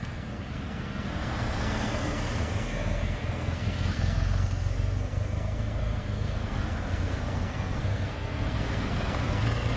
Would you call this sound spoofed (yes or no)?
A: yes